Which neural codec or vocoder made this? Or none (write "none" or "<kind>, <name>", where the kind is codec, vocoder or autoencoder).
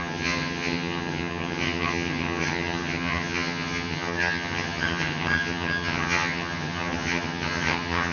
vocoder, HiFi-GAN